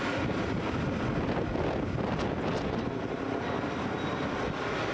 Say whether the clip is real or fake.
real